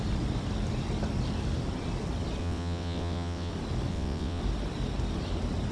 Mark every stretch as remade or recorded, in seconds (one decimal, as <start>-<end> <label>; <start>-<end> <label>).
0.0-2.4 recorded; 2.4-3.5 remade; 3.5-3.9 recorded; 3.9-4.4 remade; 4.4-5.7 recorded